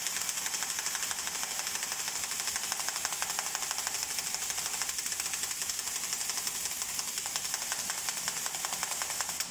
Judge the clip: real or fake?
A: real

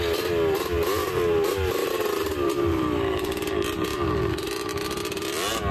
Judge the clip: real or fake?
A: real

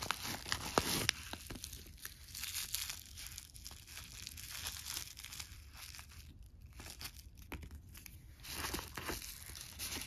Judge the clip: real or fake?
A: real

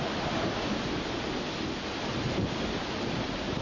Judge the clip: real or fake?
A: real